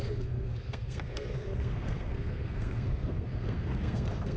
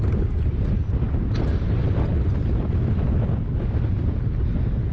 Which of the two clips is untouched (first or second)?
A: second